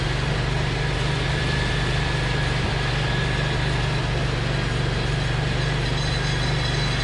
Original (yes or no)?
yes